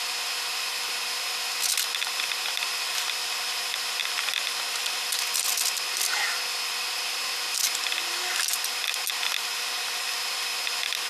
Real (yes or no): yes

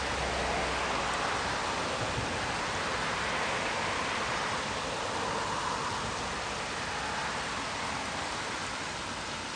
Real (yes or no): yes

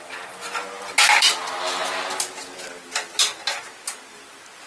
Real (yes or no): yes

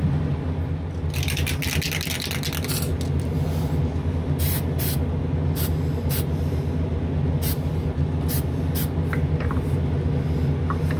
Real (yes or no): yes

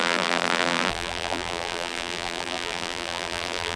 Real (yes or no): no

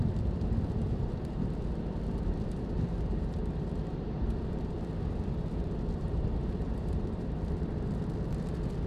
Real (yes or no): no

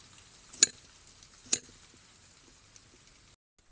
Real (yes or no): yes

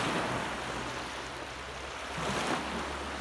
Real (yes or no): yes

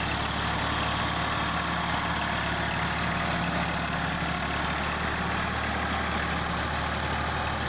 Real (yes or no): yes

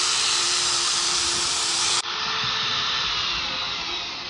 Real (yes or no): no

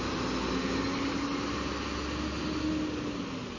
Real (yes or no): yes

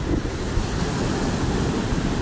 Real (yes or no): yes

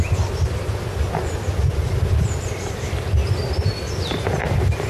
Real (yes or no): yes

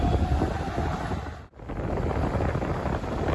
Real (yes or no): yes